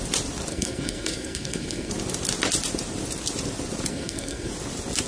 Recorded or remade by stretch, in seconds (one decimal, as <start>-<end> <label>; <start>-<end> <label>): 0.0-0.5 recorded; 0.5-1.9 remade; 1.9-3.9 recorded; 3.9-4.5 remade; 4.5-5.1 recorded